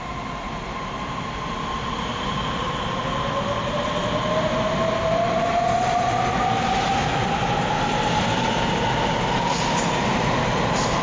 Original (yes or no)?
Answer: yes